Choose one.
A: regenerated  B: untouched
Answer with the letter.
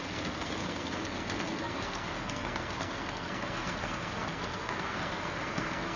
A